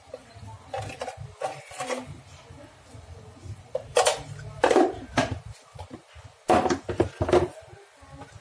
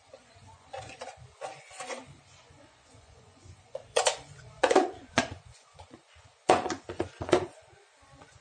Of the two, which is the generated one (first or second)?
second